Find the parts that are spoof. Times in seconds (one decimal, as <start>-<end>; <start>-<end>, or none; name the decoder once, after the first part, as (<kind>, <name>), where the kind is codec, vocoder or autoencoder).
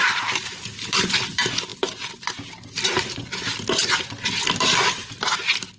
none